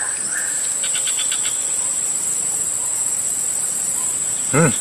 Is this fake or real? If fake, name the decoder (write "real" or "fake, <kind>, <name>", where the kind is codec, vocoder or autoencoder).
fake, vocoder, BigVGAN v2